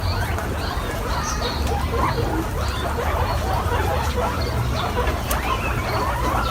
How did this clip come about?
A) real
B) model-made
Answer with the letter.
A